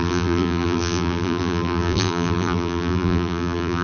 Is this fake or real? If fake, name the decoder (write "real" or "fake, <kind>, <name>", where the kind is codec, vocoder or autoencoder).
fake, vocoder, BigVGAN v2